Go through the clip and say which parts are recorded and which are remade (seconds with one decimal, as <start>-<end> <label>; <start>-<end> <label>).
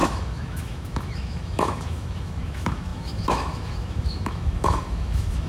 0.0-5.5 remade